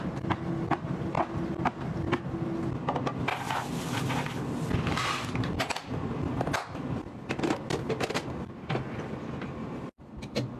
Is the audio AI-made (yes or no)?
no